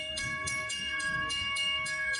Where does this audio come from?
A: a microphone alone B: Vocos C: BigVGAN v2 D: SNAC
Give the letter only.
D